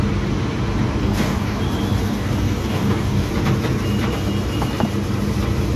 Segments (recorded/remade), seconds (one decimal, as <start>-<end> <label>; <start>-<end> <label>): 0.0-1.0 recorded; 1.0-1.6 remade; 1.6-2.0 recorded; 2.0-3.3 remade; 3.3-5.8 recorded